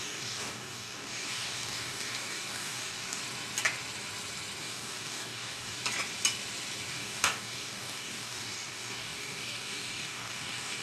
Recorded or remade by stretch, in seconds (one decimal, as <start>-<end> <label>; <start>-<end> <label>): 0.0-3.2 remade; 3.2-4.6 recorded; 4.6-5.8 remade; 5.8-6.9 recorded; 6.9-10.8 remade